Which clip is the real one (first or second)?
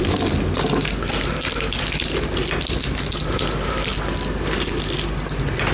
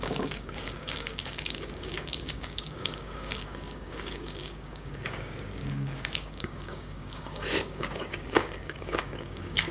first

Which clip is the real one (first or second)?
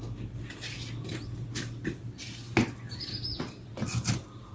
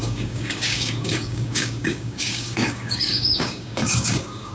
first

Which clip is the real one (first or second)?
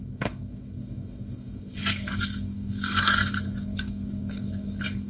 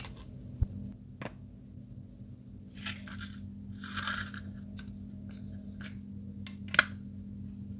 second